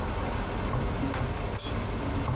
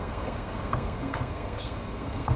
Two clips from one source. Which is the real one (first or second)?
first